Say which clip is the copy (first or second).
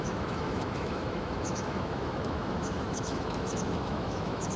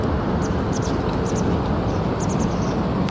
first